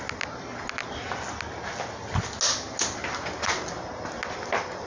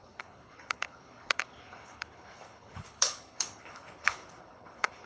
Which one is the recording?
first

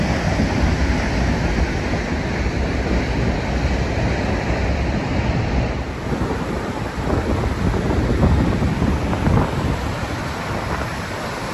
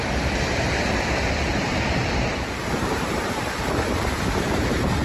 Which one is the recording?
first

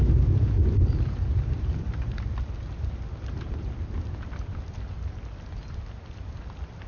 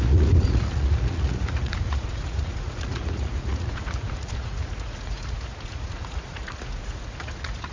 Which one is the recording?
first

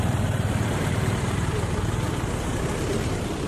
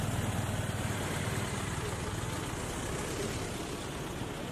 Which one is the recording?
second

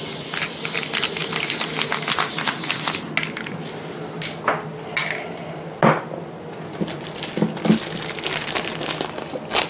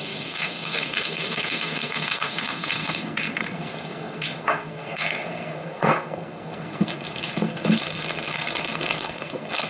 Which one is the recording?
first